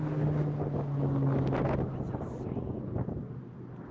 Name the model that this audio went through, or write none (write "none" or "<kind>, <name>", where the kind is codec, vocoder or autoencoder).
none